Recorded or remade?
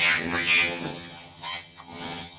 remade